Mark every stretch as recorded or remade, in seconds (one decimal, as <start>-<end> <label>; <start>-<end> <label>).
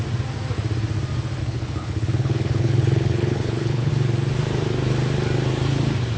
0.0-1.4 recorded; 1.4-3.9 remade; 3.9-6.2 recorded